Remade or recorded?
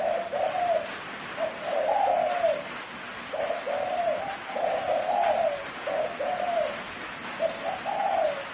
recorded